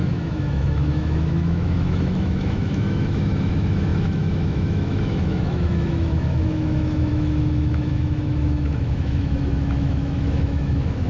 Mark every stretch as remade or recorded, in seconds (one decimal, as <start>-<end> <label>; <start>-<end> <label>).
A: 0.0-11.1 remade